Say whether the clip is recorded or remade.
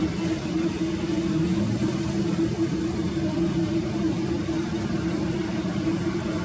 recorded